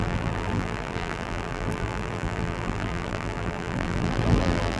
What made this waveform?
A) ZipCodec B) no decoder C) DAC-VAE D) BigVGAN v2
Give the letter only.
D